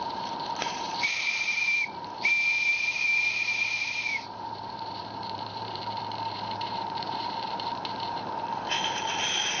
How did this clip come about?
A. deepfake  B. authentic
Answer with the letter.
A